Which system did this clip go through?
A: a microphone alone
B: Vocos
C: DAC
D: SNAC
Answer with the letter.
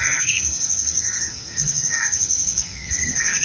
D